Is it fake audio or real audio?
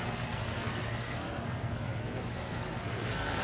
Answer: fake